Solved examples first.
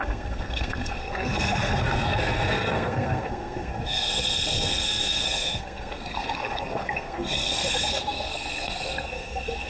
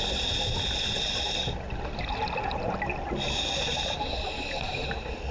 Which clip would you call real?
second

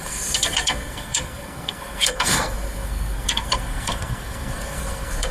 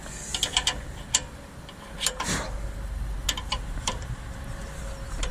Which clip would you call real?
second